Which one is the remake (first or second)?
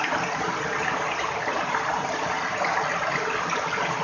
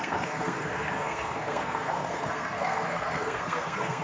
second